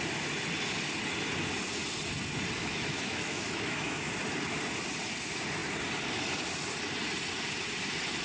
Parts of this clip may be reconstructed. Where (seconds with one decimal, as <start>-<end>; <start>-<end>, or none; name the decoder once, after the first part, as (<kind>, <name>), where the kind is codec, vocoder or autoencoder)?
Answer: 2.6-4.1 (autoencoder, DAC-VAE)